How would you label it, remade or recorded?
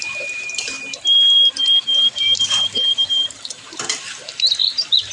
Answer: remade